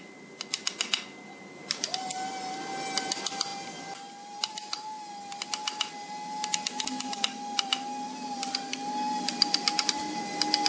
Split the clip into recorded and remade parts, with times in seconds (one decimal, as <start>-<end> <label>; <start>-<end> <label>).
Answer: 0.0-9.6 recorded; 9.6-10.2 remade; 10.2-10.7 recorded